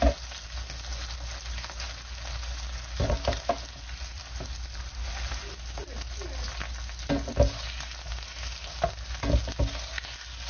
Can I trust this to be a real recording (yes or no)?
yes